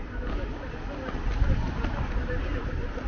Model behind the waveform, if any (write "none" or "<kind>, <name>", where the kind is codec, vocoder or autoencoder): none